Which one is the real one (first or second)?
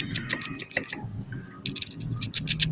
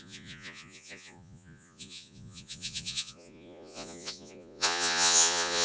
first